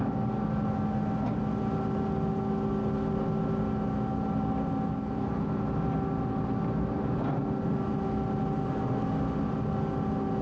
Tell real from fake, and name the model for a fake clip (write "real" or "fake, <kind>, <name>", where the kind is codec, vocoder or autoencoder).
real